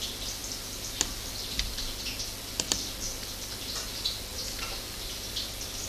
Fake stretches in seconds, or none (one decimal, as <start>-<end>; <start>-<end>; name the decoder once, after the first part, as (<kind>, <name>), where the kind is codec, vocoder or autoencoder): none